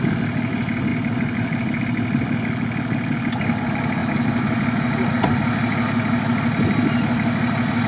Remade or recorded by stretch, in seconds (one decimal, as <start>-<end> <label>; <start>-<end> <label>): 0.0-7.9 recorded